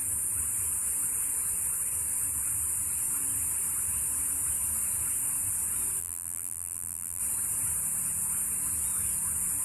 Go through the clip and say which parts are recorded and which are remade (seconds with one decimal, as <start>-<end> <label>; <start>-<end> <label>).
0.0-6.0 recorded; 6.0-7.2 remade; 7.2-9.6 recorded